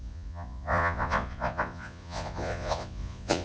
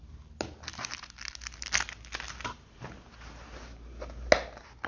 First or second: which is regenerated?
first